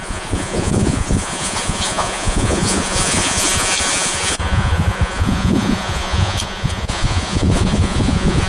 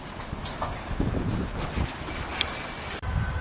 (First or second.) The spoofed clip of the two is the first